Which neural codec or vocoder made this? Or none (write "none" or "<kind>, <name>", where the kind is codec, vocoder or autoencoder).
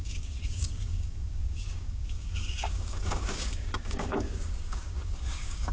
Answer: codec, DAC